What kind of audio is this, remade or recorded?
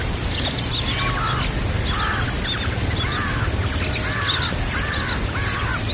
recorded